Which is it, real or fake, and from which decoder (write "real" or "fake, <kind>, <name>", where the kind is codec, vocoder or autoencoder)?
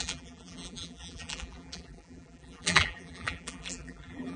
fake, vocoder, BigVGAN v2